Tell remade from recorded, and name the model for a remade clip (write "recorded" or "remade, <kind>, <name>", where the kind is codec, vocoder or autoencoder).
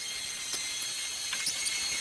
recorded